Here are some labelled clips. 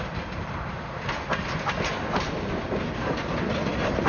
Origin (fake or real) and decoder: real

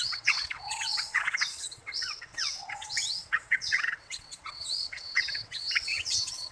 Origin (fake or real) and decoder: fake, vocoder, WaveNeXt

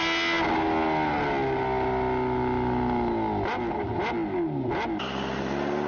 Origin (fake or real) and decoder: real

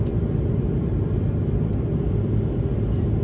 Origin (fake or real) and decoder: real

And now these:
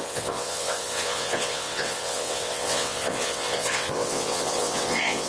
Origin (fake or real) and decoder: fake, vocoder, WaveNeXt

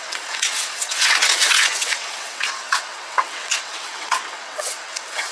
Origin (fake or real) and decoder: fake, vocoder, WaveNeXt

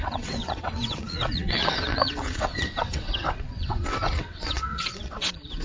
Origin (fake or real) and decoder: fake, vocoder, WaveNeXt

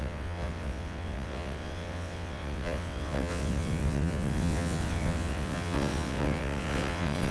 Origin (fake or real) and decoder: fake, vocoder, WaveNeXt